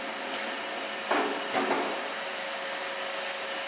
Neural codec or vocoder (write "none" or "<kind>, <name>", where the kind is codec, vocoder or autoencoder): none